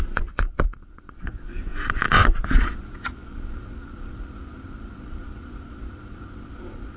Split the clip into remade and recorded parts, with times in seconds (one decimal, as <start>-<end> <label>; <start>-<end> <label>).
0.0-7.0 remade